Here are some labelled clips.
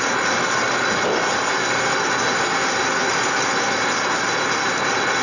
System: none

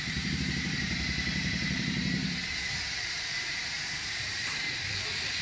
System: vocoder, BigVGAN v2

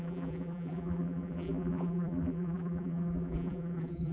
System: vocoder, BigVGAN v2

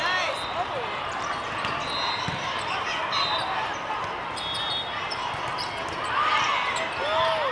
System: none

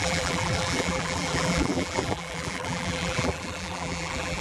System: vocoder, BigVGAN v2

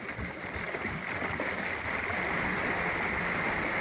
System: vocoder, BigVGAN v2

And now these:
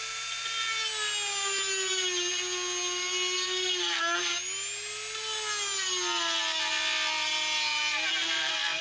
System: none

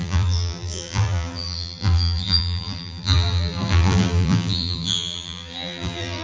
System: vocoder, BigVGAN v2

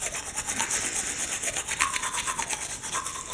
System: none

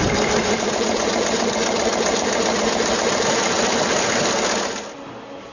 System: none